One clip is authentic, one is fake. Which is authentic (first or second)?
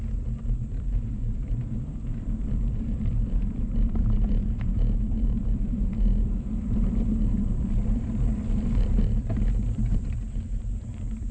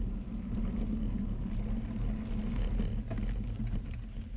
second